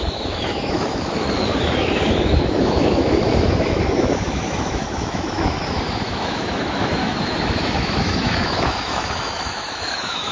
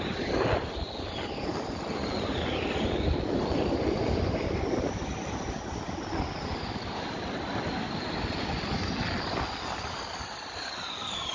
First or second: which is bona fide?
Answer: second